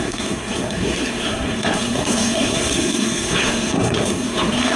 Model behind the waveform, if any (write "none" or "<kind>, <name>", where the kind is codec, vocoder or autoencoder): codec, SNAC